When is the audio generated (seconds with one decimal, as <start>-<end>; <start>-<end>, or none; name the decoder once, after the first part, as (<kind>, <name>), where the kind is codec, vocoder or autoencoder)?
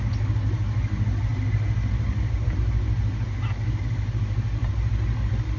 none